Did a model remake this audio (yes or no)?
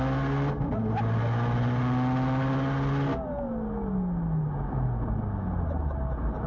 no